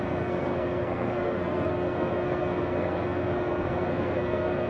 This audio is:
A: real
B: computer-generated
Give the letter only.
B